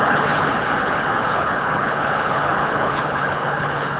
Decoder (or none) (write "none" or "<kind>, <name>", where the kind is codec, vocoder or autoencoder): codec, HILCodec